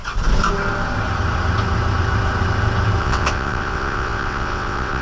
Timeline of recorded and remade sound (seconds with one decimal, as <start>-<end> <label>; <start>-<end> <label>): 0.0-3.0 recorded; 3.0-5.0 remade